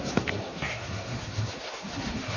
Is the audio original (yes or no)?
no